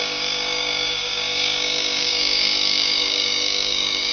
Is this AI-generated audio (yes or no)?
yes